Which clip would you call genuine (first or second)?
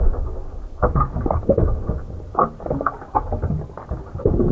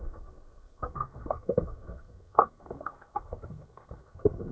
first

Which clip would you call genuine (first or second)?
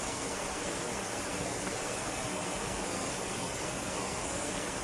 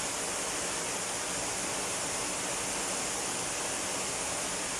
second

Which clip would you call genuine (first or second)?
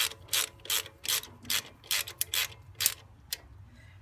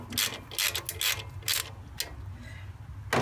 second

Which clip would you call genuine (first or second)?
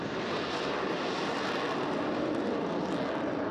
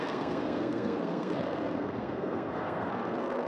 first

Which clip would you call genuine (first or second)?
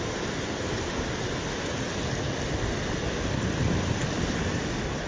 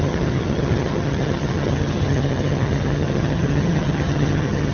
first